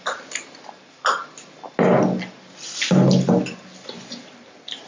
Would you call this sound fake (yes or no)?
no